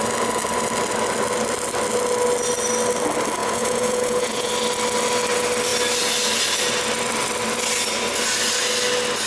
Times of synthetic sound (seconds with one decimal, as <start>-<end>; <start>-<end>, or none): 3.4-4.5